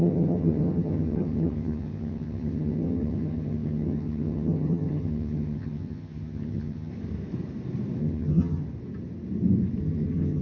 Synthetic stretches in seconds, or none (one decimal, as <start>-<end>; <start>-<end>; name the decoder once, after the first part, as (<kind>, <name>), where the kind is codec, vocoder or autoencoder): 0.0-6.9 (vocoder, HiFi-GAN); 8.0-8.6; 9.8-10.4

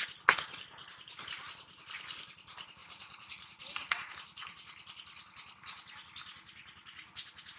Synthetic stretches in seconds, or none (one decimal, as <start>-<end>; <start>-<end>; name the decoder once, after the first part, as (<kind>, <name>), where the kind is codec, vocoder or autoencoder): 2.8-4.1 (vocoder, Vocos)

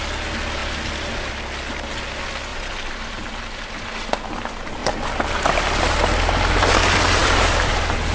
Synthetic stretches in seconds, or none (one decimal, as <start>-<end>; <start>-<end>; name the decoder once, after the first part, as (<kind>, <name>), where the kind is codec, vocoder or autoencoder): 0.6-1.6 (vocoder, BigVGAN v2); 2.5-3.7; 4.8-5.4; 7.2-8.1

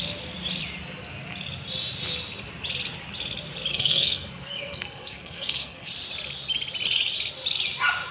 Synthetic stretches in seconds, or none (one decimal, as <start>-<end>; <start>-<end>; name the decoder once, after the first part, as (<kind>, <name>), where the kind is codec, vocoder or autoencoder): 3.7-5.9 (codec, SNAC)

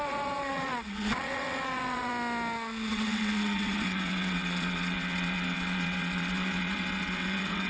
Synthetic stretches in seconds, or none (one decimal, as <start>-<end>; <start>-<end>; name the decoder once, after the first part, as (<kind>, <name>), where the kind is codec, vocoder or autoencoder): 0.0-2.1 (vocoder, WaveNeXt); 2.9-7.7

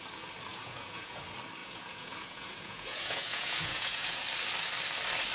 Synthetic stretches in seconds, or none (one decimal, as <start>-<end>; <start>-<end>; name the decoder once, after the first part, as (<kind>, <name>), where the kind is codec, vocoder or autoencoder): 0.5-1.2 (vocoder, Vocos); 1.6-4.2

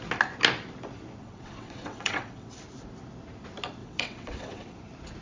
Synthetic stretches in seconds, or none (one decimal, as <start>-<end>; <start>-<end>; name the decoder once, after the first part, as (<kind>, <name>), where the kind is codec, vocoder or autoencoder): 1.2-2.6 (vocoder, WaveNeXt); 3.8-4.8

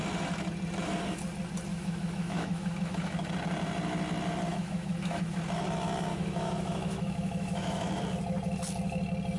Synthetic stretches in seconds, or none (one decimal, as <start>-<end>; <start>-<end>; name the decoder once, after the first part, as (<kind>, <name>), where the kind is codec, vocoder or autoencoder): 1.7-3.3 (autoencoder, DAC-VAE); 4.5-5.4; 6.1-8.0